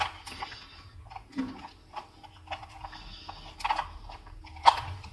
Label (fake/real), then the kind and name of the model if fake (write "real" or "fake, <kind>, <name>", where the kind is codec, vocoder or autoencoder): real